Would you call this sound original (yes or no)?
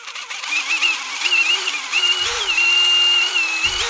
no